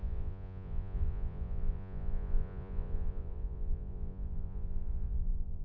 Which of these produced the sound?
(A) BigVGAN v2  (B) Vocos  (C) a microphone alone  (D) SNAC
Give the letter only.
B